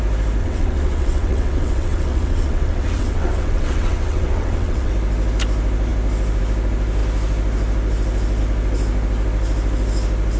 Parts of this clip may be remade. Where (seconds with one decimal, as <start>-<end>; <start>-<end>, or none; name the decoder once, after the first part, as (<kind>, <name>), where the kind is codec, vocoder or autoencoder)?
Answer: 0.4-4.9 (vocoder, WaveNeXt)